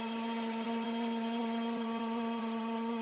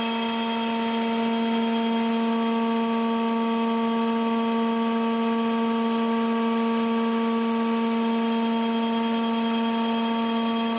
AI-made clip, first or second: first